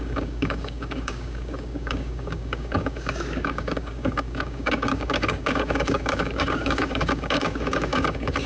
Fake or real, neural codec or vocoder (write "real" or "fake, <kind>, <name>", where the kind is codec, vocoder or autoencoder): fake, codec, DAC